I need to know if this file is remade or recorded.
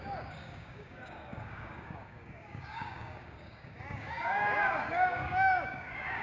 remade